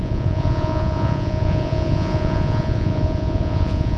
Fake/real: fake